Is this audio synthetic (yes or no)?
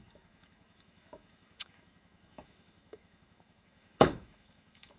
yes